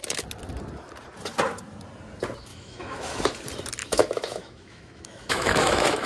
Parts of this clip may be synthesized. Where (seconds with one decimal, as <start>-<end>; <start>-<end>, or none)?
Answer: 2.5-3.2; 3.8-6.1